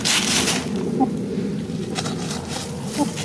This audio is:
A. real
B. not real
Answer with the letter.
A